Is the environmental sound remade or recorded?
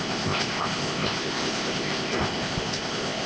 remade